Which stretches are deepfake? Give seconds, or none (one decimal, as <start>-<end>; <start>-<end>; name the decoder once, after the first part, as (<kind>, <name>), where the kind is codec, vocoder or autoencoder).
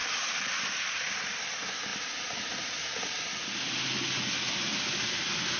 none